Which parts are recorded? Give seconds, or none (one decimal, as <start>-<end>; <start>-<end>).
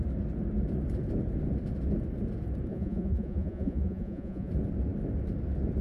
0.0-2.7; 4.5-5.8